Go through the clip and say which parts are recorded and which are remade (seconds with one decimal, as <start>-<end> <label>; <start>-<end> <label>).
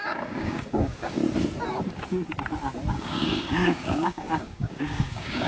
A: 0.0-1.2 remade; 1.2-2.9 recorded; 2.9-5.5 remade